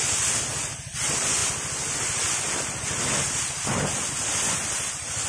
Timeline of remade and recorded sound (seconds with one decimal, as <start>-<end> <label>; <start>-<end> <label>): 0.0-5.3 recorded

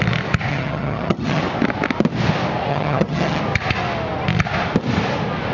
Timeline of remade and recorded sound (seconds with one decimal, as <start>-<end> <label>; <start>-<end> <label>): 0.0-0.5 recorded; 0.5-1.4 remade; 1.4-2.7 recorded; 2.7-3.4 remade; 3.4-5.5 recorded